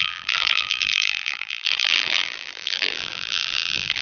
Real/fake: fake